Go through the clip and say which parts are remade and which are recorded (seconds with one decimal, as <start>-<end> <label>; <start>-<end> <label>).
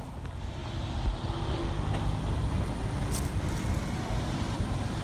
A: 0.0-5.0 recorded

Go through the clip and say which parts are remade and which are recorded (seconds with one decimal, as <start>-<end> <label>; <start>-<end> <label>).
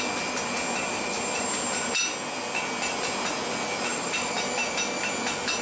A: 0.0-0.9 recorded; 0.9-1.9 remade; 1.9-3.9 recorded; 3.9-5.1 remade; 5.1-5.6 recorded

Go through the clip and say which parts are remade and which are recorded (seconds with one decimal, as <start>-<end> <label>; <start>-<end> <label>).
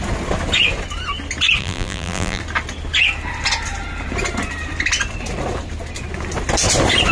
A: 0.0-1.6 recorded; 1.6-2.4 remade; 2.4-7.1 recorded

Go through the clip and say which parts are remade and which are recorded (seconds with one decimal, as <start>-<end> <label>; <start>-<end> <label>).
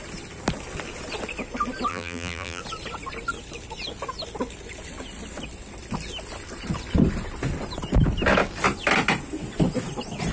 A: 0.0-1.9 recorded; 1.9-2.6 remade; 2.6-10.3 recorded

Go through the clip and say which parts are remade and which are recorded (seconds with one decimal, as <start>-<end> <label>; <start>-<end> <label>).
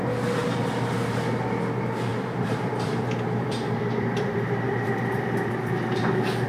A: 0.0-2.1 recorded; 2.1-6.0 remade; 6.0-6.5 recorded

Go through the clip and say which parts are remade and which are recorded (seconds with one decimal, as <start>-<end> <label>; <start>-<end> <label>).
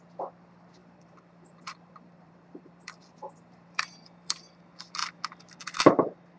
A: 0.0-0.8 recorded; 0.8-4.6 remade; 4.6-6.4 recorded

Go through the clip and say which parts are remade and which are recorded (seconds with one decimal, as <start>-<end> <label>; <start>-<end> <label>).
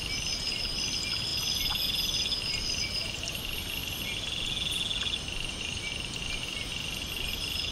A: 0.0-7.7 recorded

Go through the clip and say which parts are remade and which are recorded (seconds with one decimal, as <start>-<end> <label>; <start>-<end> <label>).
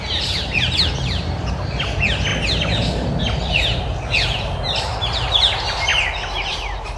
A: 0.0-5.9 recorded; 5.9-7.0 remade